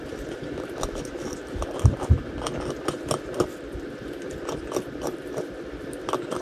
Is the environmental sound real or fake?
real